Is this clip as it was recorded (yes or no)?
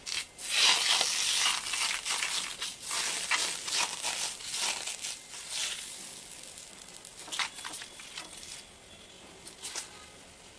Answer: yes